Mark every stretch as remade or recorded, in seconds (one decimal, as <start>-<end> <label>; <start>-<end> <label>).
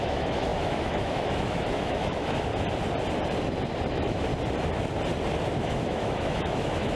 0.0-2.5 remade; 2.5-3.9 recorded; 3.9-4.3 remade; 4.3-5.6 recorded; 5.6-7.0 remade